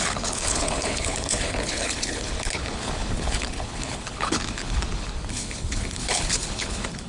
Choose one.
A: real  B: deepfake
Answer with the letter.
B